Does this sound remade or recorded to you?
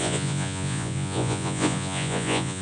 remade